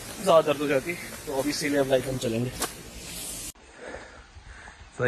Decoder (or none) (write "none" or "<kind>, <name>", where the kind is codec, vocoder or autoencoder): none